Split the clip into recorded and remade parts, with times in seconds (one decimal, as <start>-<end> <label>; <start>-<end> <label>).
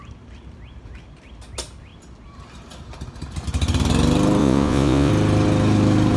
0.0-4.4 recorded; 4.4-5.1 remade; 5.1-6.2 recorded